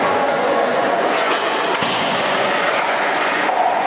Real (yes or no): no